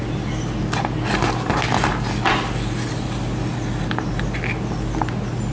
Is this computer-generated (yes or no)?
no